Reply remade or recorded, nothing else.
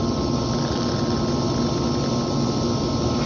recorded